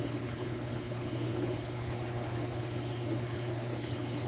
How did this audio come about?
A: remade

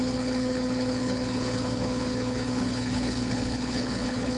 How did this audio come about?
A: remade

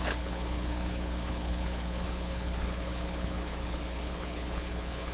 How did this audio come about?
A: remade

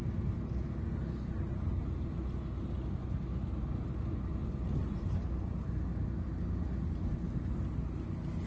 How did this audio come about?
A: recorded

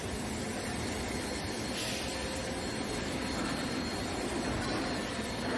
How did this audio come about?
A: recorded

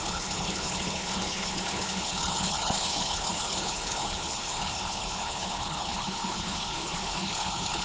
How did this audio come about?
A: remade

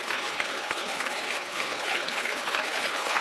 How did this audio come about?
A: remade